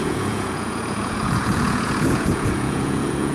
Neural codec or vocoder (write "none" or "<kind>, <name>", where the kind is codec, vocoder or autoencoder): vocoder, Vocos